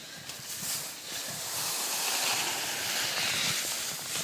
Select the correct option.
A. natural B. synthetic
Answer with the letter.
A